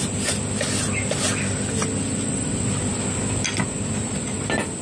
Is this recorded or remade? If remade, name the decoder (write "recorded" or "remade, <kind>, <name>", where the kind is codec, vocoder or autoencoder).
recorded